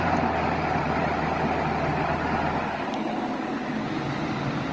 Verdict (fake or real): real